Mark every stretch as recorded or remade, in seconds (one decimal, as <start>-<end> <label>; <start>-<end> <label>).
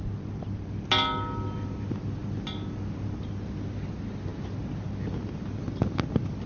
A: 0.0-6.5 recorded